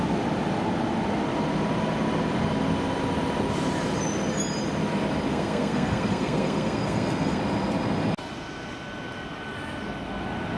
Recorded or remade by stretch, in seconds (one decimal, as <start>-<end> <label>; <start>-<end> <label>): 0.0-5.3 recorded; 5.3-7.4 remade; 7.4-10.6 recorded